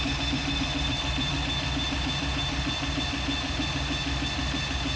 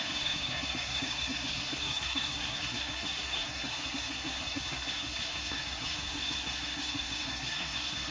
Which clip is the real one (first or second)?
first